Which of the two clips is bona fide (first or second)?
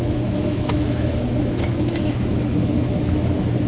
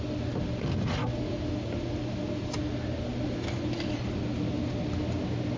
second